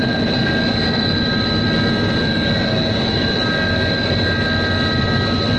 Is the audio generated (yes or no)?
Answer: no